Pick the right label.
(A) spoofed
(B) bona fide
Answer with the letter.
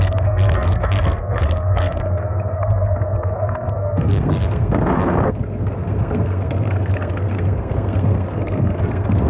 A